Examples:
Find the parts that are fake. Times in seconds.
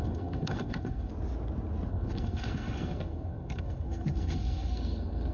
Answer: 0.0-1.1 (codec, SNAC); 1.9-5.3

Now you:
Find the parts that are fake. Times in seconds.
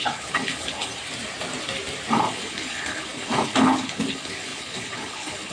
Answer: 0.0-0.9 (codec, HILCodec); 2.1-5.5